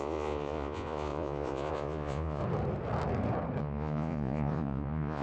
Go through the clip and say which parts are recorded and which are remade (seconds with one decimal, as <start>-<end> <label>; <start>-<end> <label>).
0.0-2.4 remade; 2.4-3.6 recorded; 3.6-5.2 remade